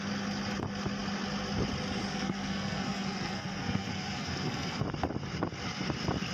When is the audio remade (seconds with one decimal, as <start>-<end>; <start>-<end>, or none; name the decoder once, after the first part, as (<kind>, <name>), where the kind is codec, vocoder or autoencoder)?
2.1-4.8 (codec, SNAC)